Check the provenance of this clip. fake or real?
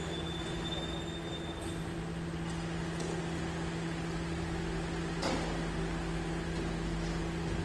real